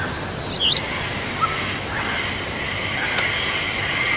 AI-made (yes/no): no